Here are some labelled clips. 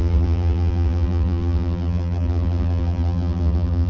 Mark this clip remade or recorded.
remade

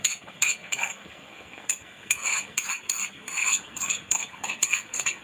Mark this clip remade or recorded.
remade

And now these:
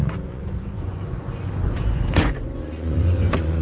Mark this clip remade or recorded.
remade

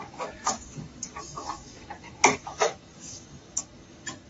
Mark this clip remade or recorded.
remade